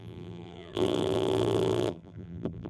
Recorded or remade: remade